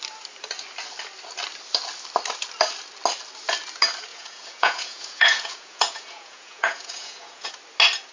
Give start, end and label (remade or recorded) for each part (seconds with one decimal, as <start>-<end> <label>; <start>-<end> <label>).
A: 0.0-4.1 recorded; 4.1-7.5 remade; 7.5-8.1 recorded